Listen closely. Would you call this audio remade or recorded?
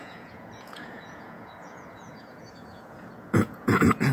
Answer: remade